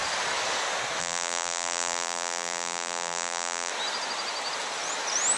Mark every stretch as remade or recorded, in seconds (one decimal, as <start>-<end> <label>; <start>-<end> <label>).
0.0-1.0 recorded; 1.0-3.7 remade; 3.7-5.4 recorded